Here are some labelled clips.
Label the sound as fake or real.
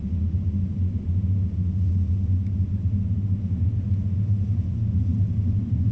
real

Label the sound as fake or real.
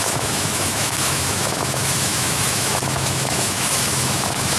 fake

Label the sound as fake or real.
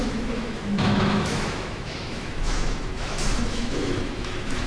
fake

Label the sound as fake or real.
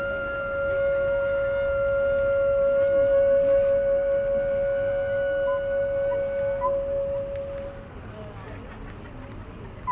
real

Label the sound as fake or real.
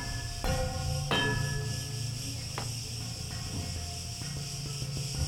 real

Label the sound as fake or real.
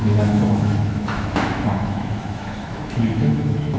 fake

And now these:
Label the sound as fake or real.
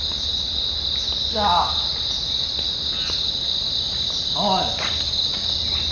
real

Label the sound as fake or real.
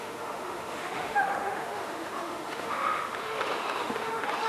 fake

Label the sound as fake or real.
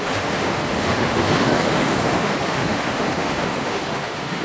fake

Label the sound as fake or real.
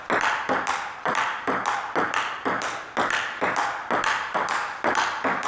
real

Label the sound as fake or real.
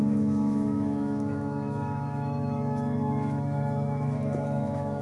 fake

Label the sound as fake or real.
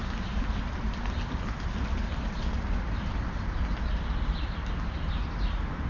real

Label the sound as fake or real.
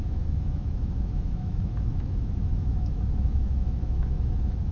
fake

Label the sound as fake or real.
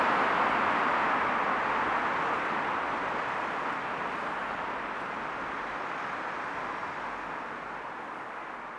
real